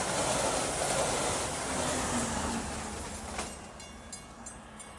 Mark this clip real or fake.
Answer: real